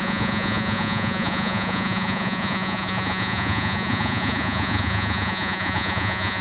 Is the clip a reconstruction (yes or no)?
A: yes